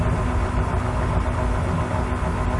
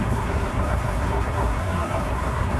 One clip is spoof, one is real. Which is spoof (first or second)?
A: second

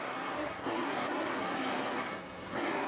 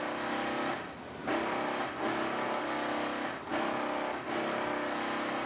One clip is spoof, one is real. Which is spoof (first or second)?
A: first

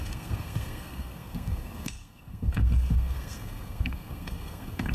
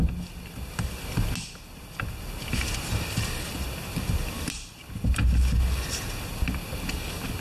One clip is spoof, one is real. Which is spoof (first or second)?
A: first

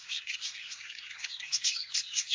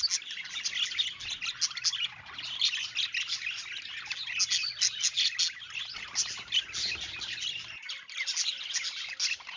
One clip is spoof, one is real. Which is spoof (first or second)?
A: first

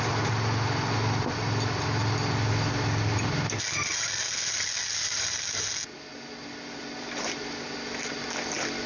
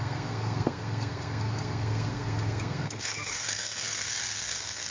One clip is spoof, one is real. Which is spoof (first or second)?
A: second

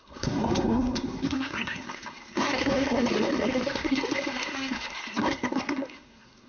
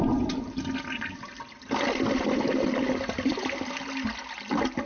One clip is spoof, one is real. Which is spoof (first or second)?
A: first